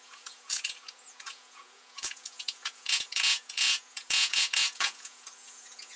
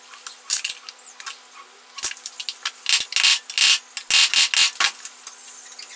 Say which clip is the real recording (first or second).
second